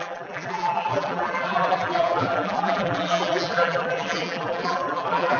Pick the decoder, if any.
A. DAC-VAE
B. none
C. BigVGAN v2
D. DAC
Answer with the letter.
C